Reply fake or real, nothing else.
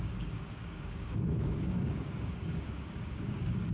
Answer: fake